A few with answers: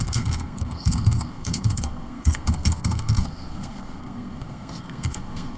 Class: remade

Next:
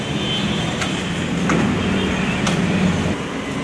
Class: recorded